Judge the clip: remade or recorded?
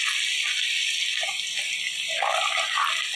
recorded